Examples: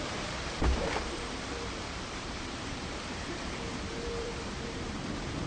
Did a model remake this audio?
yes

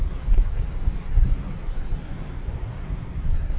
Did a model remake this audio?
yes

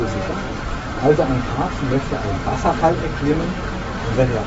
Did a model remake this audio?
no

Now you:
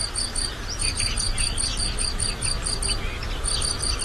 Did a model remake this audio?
no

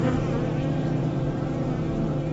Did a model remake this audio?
no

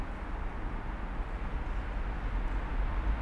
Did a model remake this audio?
no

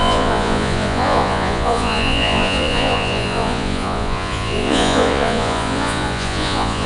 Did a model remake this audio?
yes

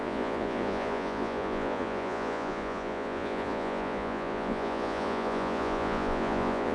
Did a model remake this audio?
yes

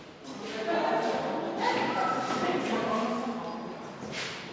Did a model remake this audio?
no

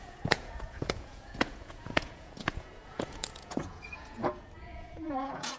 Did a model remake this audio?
yes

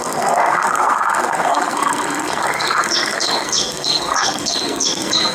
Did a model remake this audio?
yes